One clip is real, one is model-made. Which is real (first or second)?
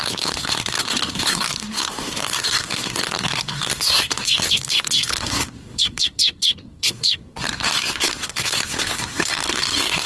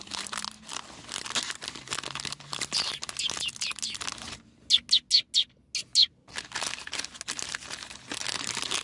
second